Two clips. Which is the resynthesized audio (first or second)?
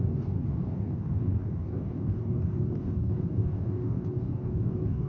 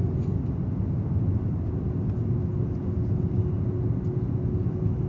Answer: first